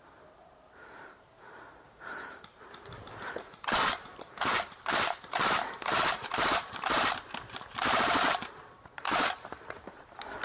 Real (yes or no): no